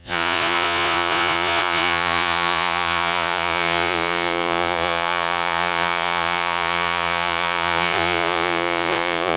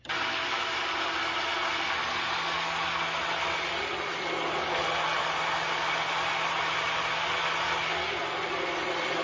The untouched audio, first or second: second